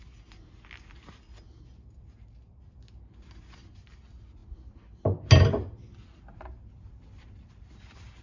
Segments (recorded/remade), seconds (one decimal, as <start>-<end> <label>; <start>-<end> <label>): 0.0-8.2 recorded